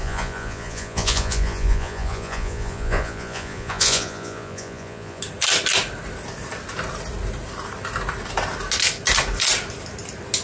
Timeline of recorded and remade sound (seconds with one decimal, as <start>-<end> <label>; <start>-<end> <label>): 0.0-5.2 remade; 5.2-10.4 recorded